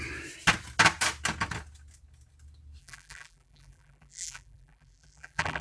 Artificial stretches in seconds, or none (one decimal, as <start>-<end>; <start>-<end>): 2.8-5.6